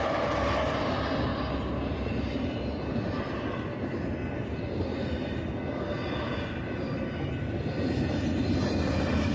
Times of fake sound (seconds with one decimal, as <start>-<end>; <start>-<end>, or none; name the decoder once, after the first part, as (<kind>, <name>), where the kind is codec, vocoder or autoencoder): none